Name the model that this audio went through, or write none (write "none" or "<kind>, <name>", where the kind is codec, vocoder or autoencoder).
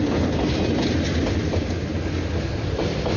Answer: none